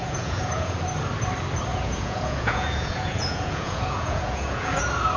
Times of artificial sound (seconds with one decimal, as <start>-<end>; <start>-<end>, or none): 0.0-0.8; 1.7-4.8

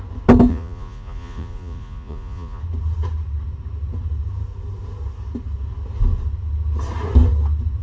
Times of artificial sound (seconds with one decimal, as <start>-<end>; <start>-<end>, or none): 0.5-2.6